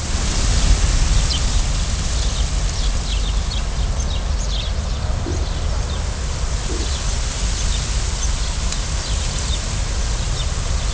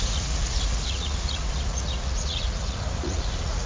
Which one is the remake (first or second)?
second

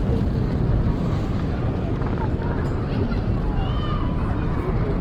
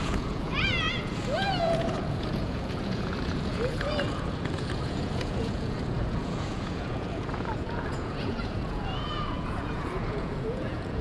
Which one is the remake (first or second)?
second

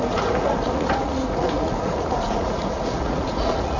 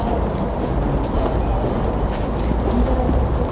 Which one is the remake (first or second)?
first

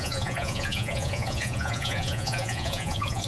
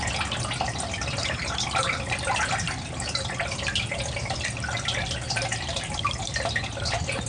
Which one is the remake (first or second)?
first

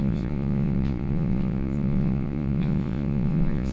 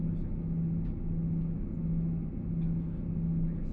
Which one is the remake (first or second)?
first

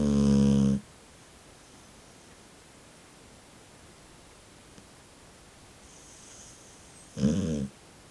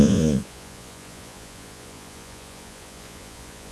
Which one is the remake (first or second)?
second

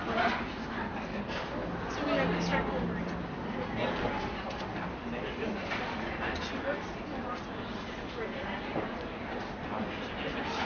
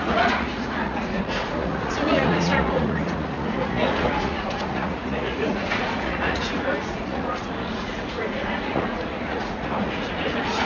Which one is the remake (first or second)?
second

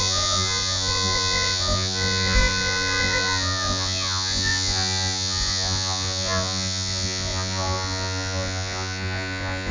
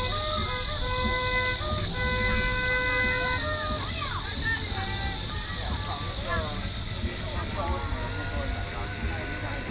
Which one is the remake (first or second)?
first